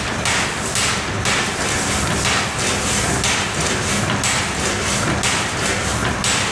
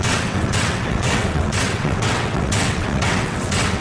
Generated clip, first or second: second